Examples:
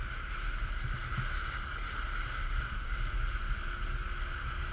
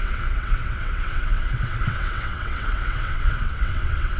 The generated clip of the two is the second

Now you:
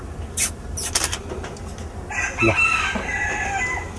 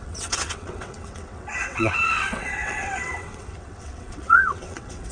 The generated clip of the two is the second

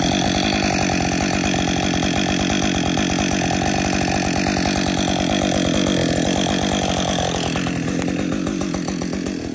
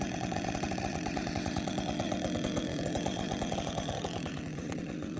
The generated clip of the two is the second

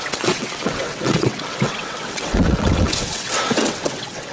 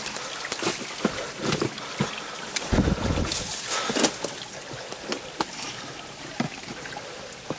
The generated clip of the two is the first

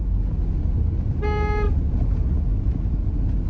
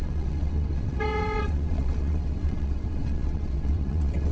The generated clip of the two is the second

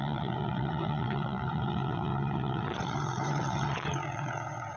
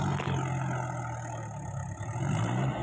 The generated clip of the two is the first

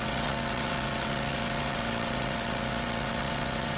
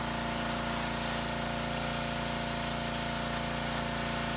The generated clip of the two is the first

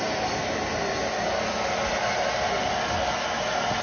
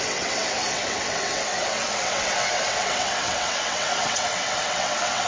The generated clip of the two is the second